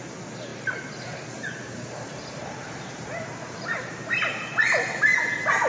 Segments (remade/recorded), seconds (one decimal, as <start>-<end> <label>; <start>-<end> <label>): 0.0-0.5 recorded; 0.5-3.9 remade; 3.9-5.7 recorded